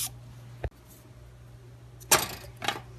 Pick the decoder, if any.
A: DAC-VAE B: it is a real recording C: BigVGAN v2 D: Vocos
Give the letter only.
B